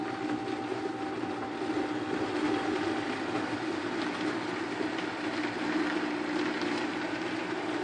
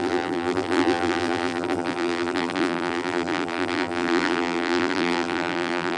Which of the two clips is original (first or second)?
first